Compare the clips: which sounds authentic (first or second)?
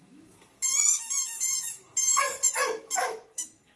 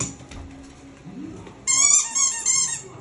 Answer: second